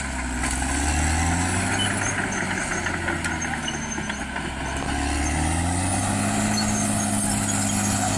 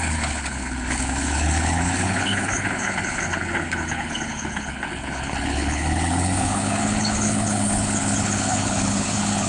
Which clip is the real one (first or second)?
first